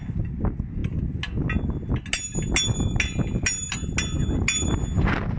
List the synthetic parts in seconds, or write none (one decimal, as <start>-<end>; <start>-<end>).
none